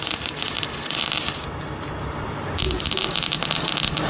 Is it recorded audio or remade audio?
remade